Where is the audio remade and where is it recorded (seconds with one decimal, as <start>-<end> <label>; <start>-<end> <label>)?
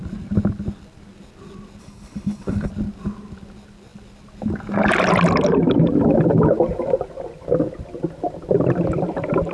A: 0.0-1.8 recorded; 1.8-2.7 remade; 2.7-9.5 recorded